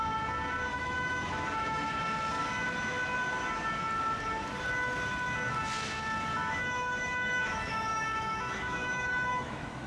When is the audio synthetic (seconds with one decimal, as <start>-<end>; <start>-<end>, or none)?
0.7-2.0; 6.4-9.9